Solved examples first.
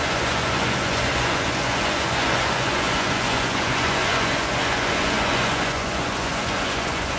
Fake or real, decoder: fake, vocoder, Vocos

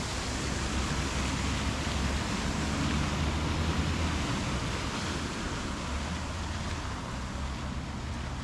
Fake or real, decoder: real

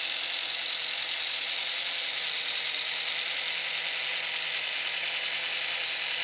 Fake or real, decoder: real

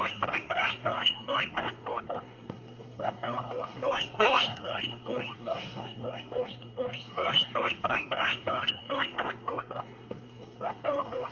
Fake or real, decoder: fake, codec, SNAC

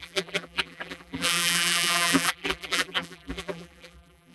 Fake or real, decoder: fake, vocoder, BigVGAN v2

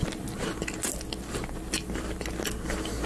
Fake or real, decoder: real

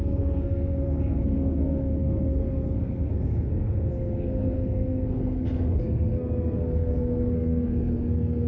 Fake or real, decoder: fake, codec, SNAC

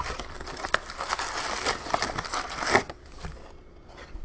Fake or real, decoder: real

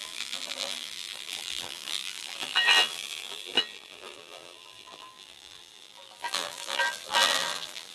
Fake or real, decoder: fake, vocoder, BigVGAN v2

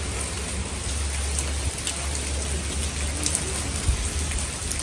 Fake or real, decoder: real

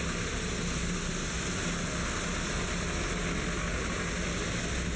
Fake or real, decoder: real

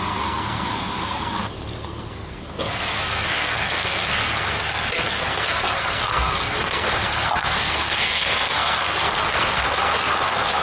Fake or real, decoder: fake, codec, SNAC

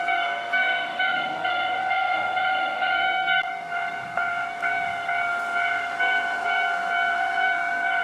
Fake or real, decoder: fake, codec, SNAC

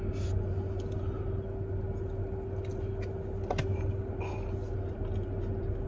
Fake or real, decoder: real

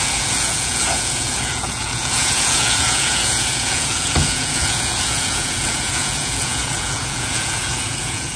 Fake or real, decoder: fake, vocoder, Vocos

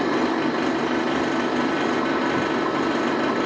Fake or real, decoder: real